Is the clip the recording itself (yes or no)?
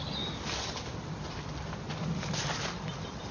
yes